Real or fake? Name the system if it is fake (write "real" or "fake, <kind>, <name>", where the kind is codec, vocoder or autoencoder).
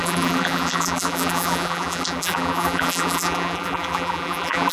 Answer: fake, vocoder, BigVGAN v2